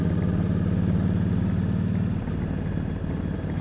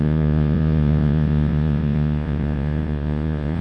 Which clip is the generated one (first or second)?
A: second